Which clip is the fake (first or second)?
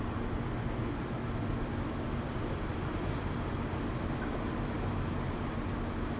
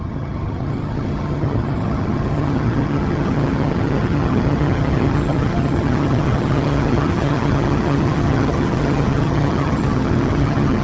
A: second